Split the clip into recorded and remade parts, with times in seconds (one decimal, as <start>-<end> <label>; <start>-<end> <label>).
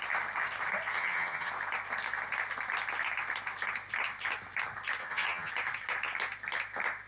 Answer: 0.0-0.9 recorded; 0.9-1.5 remade; 1.5-5.0 recorded; 5.0-5.5 remade; 5.5-7.1 recorded